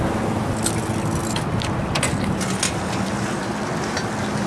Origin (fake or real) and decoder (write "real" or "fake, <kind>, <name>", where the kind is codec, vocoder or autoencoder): real